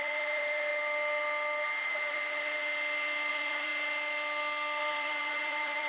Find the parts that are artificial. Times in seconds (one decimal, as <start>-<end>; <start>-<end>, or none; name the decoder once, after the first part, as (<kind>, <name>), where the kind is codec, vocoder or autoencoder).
0.0-0.7 (vocoder, BigVGAN v2); 2.1-2.6; 3.3-3.7; 4.8-5.9